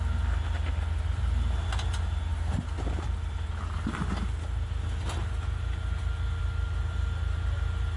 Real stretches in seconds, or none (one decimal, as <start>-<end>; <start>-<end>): 0.0-8.0